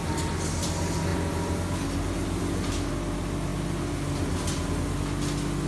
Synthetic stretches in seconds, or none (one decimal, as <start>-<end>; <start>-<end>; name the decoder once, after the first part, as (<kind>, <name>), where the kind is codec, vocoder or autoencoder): none